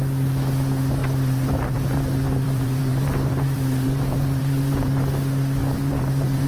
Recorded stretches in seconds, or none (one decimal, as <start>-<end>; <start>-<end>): 0.0-1.0; 4.9-5.6